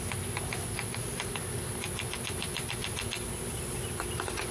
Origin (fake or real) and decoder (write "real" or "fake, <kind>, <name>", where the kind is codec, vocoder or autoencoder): real